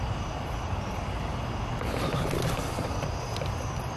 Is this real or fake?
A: real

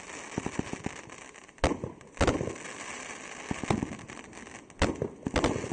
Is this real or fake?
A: real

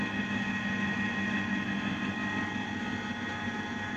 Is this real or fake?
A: real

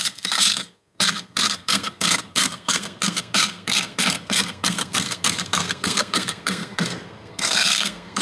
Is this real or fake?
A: fake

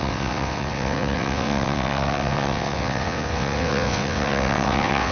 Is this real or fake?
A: fake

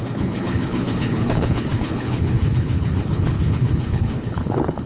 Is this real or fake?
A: fake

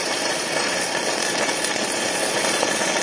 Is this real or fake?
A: fake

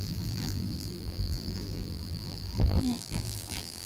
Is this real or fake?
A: fake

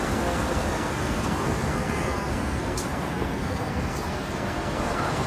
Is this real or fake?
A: fake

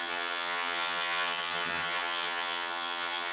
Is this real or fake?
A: fake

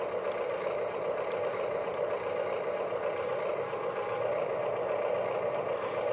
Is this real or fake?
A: real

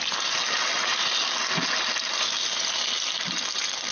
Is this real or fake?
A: real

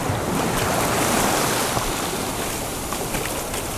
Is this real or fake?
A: real